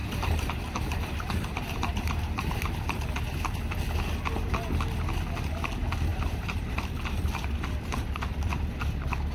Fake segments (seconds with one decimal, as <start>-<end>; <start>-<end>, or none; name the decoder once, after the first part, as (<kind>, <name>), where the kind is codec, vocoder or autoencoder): 0.0-2.7 (vocoder, BigVGAN v2); 6.1-7.5